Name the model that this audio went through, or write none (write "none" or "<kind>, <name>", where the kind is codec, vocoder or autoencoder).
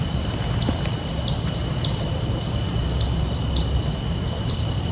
none